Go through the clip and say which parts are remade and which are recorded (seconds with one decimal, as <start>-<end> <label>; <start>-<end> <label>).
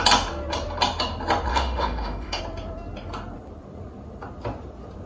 0.0-1.5 recorded; 1.5-2.4 remade; 2.4-5.1 recorded